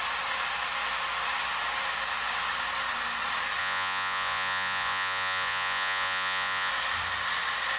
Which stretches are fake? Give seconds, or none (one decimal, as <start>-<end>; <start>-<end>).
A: 3.6-6.7